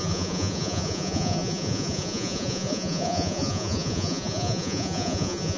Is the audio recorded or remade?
remade